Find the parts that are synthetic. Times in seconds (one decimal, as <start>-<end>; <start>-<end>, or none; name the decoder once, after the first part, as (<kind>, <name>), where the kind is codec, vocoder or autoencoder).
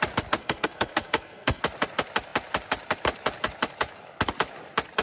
0.4-1.6 (codec, SNAC)